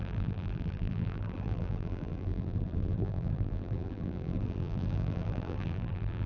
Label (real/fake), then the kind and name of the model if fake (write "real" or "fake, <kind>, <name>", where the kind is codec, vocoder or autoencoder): fake, vocoder, BigVGAN v2